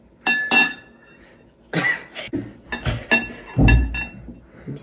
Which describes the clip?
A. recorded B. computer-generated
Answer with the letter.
A